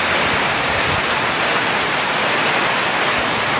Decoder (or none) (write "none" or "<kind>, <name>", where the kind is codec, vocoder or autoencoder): none